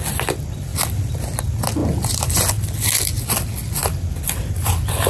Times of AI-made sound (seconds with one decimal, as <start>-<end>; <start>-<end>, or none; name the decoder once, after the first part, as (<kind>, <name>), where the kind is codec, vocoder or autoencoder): none